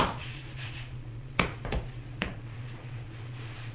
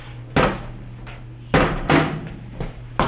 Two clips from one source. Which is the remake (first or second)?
first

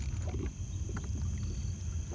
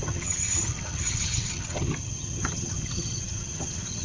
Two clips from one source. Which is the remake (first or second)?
second